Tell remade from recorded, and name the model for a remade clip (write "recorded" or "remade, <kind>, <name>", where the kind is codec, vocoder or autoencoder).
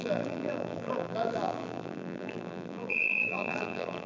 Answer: remade, vocoder, BigVGAN v2